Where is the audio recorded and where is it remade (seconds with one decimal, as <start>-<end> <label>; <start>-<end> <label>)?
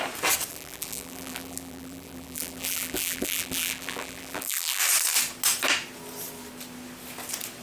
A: 0.0-0.5 recorded; 0.5-4.8 remade; 4.8-7.6 recorded